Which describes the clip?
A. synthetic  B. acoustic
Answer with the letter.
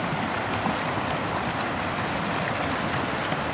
B